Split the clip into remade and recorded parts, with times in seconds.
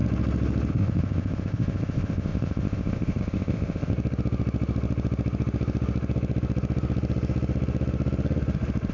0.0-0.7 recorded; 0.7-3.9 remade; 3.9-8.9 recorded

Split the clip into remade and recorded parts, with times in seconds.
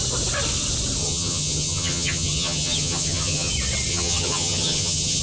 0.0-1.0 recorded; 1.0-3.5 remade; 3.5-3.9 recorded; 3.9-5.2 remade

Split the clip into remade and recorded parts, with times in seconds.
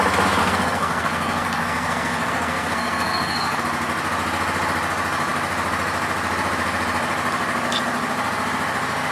0.0-0.4 recorded; 0.4-3.6 remade; 3.6-9.1 recorded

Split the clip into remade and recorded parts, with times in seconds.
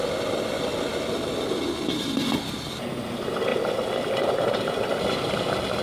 0.0-5.8 recorded